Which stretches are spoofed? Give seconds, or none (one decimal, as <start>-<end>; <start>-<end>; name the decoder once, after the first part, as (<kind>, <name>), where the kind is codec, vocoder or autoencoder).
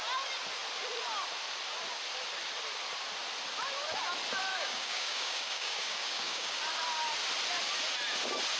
4.5-6.6 (codec, DAC)